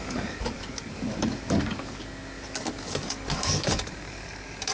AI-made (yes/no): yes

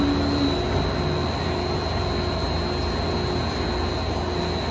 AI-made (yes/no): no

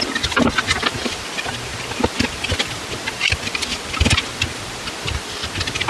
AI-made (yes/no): no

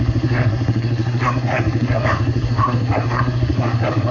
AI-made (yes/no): yes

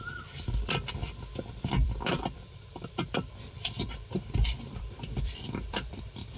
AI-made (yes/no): yes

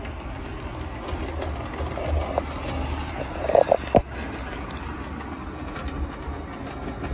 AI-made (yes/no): no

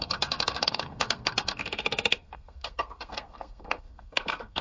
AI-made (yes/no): yes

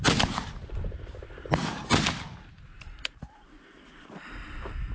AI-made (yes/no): no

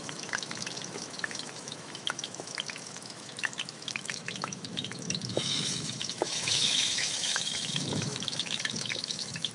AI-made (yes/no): yes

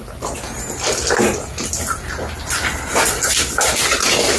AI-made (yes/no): no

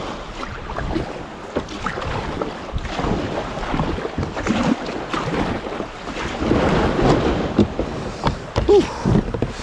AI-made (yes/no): no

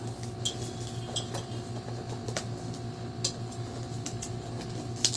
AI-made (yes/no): no